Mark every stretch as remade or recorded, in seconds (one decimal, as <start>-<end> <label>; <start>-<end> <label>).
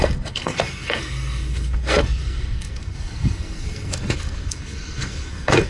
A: 0.0-5.7 remade